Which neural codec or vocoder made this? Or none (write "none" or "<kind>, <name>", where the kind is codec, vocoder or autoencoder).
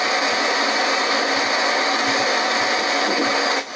none